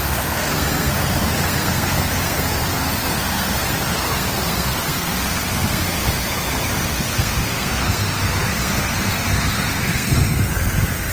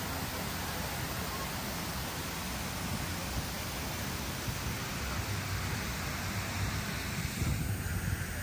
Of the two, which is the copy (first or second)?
first